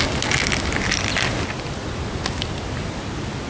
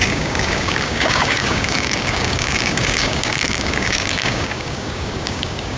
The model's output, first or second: second